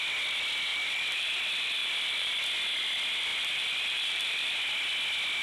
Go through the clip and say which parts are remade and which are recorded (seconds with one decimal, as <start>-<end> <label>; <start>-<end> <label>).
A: 0.0-0.7 recorded; 0.7-1.3 remade; 1.3-1.8 recorded; 1.8-2.4 remade; 2.4-3.3 recorded; 3.3-4.6 remade; 4.6-5.4 recorded